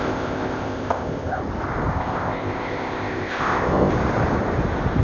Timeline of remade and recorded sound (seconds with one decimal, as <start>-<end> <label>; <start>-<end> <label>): 0.0-1.4 remade; 1.4-1.9 recorded; 1.9-3.9 remade; 3.9-5.0 recorded